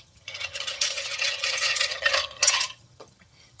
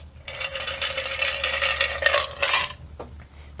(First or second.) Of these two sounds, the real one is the second